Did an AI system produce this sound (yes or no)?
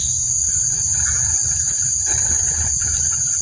no